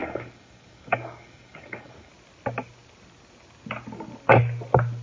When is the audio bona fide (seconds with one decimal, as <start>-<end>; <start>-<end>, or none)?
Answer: 2.1-5.0